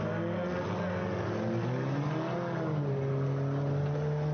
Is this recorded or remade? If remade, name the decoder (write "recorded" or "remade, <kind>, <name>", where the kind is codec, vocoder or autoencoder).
recorded